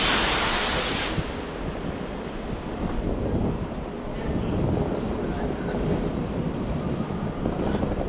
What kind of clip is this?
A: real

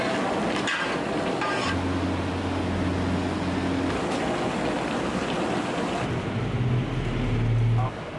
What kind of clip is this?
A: real